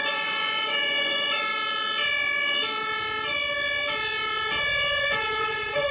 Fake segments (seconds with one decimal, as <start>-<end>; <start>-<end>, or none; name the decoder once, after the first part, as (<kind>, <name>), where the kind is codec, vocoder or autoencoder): 0.0-1.5 (vocoder, Vocos); 5.0-5.9